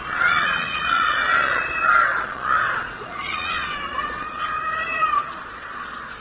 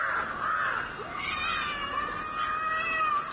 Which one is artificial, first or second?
first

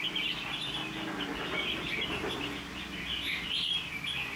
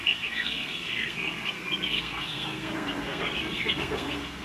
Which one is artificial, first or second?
second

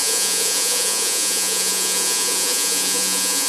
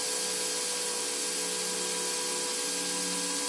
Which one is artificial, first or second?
first